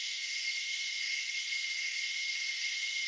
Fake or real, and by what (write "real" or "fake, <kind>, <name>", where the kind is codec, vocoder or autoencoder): fake, autoencoder, DAC-VAE